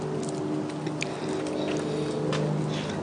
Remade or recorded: recorded